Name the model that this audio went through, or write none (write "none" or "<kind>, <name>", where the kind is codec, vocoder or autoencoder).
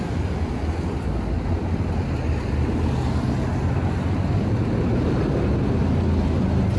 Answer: none